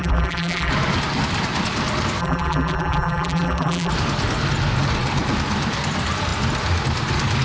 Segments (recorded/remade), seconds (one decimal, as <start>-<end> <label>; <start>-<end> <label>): 0.0-0.7 remade; 0.7-2.2 recorded; 2.2-3.9 remade; 3.9-7.4 recorded